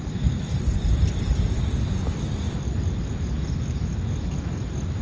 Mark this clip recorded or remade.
recorded